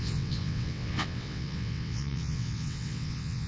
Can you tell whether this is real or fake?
fake